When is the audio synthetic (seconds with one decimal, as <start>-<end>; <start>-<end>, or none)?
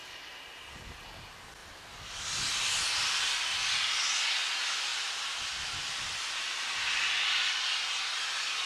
4.9-5.9